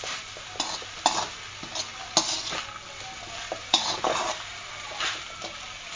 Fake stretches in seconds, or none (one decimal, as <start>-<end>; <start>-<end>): 3.6-6.0